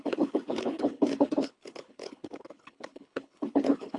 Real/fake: fake